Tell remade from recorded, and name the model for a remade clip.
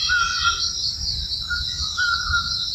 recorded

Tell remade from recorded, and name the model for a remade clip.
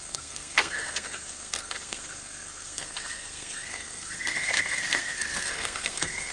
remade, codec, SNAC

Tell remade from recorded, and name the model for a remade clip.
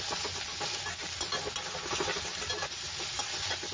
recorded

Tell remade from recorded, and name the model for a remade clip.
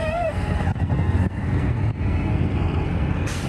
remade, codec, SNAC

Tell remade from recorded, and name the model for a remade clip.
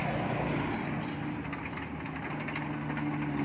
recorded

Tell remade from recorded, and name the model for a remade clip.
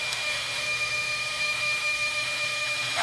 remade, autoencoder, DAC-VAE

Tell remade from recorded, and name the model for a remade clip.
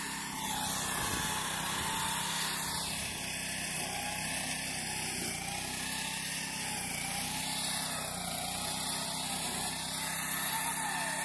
recorded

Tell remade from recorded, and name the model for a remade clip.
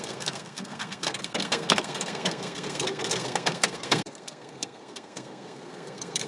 remade, codec, SNAC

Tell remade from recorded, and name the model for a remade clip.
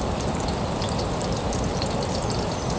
remade, vocoder, BigVGAN v2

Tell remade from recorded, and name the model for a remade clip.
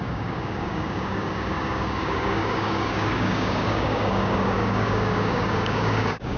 remade, codec, DAC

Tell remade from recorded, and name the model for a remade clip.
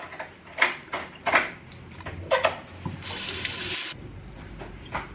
recorded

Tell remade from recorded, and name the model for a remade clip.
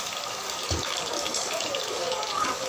remade, codec, DAC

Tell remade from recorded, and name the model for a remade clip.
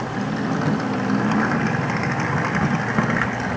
recorded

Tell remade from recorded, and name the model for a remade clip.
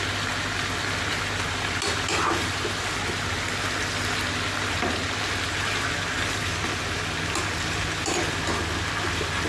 recorded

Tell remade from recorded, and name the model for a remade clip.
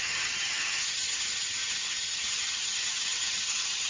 remade, vocoder, HiFi-GAN